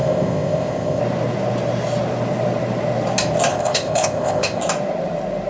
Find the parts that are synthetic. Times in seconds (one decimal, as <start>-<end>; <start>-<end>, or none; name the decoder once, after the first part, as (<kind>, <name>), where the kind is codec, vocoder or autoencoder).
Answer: 0.0-1.0 (codec, ZipCodec); 3.5-4.6